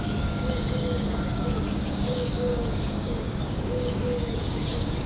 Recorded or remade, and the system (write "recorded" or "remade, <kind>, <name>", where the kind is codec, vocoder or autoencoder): remade, codec, DAC